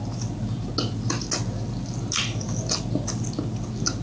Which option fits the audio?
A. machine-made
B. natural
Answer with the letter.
B